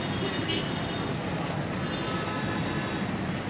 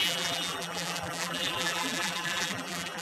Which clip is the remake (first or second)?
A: second